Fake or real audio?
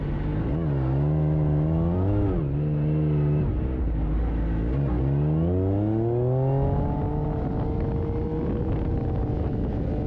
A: real